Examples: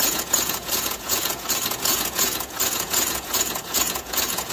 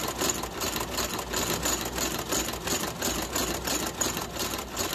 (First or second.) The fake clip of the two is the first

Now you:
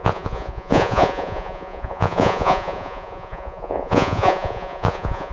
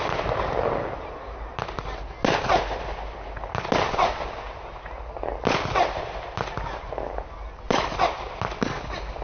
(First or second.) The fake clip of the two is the first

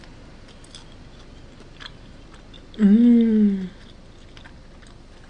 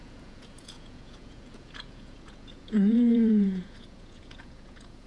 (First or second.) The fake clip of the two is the second